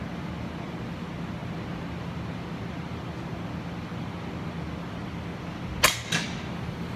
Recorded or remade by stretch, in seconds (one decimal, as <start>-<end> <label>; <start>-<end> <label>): 0.0-7.0 recorded